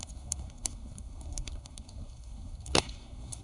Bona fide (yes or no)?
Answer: no